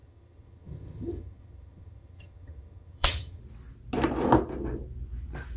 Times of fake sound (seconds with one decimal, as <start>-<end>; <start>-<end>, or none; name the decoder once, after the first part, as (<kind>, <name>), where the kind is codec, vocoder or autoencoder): 0.0-3.4 (vocoder, HiFi-GAN)